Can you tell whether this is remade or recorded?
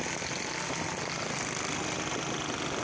recorded